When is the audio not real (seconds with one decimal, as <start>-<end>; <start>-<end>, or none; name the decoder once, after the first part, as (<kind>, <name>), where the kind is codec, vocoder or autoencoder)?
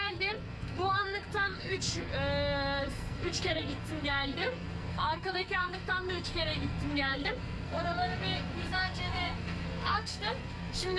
0.0-2.1 (codec, SNAC); 2.8-11.0